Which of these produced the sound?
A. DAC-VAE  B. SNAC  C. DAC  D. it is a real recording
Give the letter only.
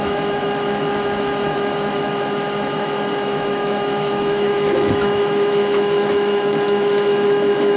A